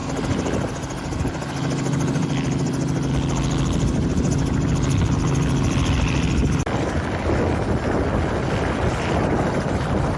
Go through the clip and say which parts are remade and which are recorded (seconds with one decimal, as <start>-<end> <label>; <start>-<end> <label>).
0.0-10.2 recorded